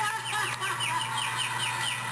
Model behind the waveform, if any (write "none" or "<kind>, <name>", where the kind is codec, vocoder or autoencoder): none